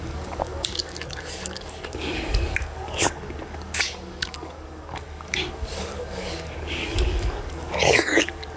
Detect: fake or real fake